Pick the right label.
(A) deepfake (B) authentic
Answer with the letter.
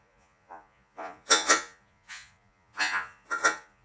A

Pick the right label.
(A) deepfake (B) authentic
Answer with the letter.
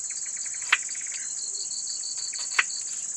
B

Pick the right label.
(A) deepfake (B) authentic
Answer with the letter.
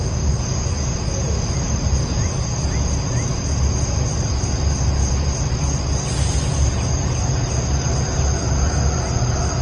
B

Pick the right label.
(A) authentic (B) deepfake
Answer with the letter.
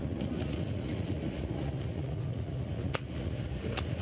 B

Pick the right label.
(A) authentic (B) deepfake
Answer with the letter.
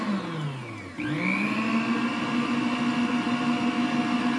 A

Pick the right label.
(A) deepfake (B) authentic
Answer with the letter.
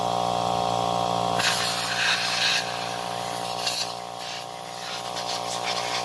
B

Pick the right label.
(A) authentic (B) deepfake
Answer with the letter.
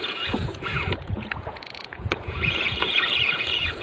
B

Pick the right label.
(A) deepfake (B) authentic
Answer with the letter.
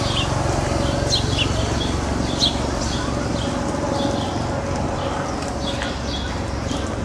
B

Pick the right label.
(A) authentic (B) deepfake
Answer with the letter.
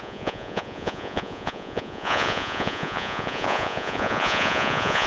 B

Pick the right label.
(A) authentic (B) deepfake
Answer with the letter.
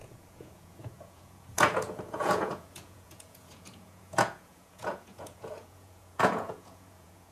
B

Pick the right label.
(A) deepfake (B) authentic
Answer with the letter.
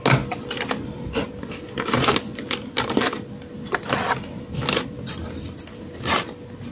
B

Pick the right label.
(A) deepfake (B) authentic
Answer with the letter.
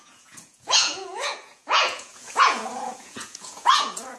A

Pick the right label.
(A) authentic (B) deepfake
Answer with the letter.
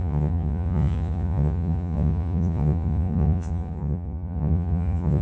B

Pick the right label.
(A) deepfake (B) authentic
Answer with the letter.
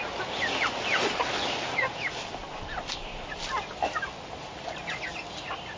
B